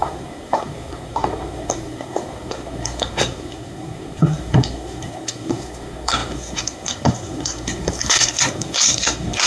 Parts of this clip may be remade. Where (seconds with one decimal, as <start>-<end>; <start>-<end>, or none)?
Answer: 0.0-9.5